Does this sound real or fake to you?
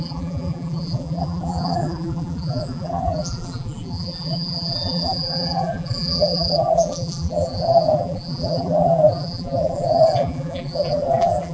fake